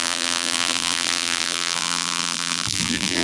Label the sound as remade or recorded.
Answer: remade